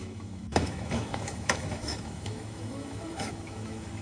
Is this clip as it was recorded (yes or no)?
no